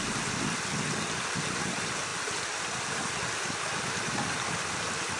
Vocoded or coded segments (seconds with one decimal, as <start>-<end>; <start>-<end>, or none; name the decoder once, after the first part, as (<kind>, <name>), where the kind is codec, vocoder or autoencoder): none